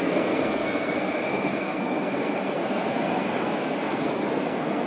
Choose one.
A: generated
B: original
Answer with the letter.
A